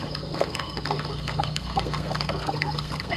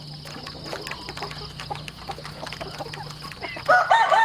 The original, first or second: second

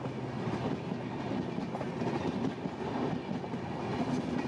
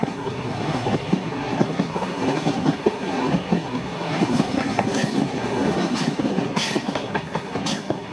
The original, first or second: first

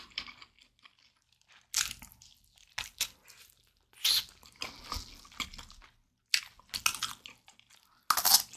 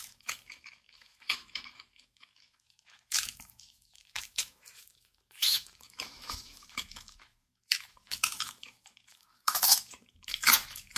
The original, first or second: first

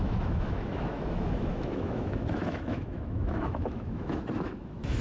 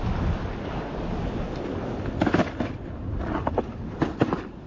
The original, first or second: second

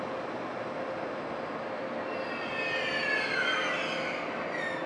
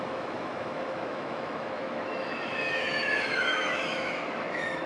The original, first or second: first